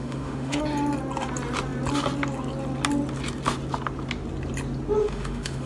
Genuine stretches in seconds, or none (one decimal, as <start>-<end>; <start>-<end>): 0.6-5.0